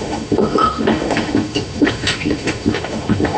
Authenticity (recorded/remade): remade